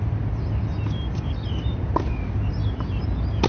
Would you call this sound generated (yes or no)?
no